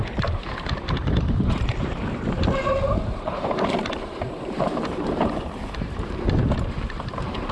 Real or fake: fake